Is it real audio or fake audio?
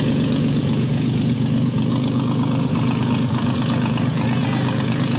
fake